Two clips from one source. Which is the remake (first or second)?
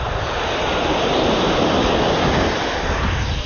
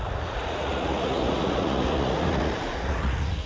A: second